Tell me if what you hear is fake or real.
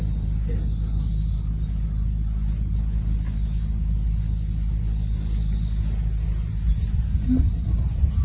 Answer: real